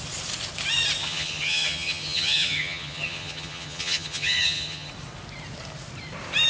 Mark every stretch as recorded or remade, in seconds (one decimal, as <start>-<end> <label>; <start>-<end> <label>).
0.0-1.0 recorded; 1.0-4.9 remade; 4.9-6.5 recorded